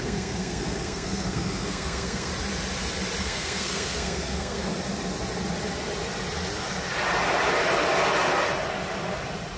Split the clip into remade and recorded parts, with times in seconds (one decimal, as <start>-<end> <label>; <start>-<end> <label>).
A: 0.0-2.3 remade; 2.3-3.2 recorded; 3.2-4.7 remade; 4.7-9.6 recorded